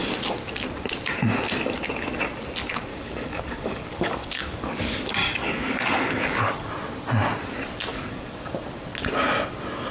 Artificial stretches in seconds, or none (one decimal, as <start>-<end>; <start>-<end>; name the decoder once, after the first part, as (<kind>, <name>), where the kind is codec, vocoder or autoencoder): 2.9-6.7 (codec, DAC); 7.9-8.5